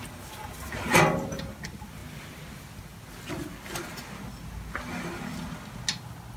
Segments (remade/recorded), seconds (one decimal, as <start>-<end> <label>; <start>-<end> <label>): 0.0-6.4 recorded